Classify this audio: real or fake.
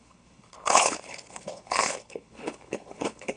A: fake